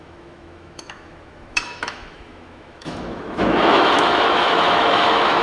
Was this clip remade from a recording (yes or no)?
yes